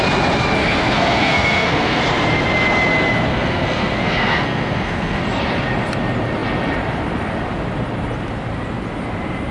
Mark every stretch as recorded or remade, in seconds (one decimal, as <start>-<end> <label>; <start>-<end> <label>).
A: 0.0-0.6 recorded; 0.6-2.0 remade; 2.0-3.3 recorded; 3.3-5.2 remade; 5.2-9.5 recorded